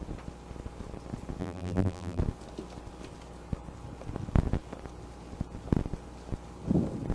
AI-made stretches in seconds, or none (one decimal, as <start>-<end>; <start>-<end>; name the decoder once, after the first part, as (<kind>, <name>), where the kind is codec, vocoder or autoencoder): 1.4-2.2 (vocoder, BigVGAN v2)